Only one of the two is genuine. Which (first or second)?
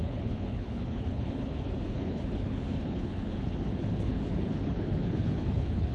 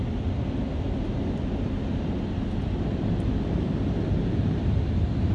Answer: second